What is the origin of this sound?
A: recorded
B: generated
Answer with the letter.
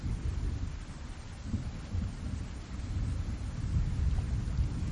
A